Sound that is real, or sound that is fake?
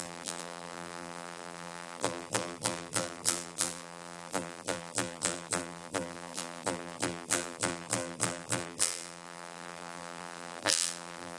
fake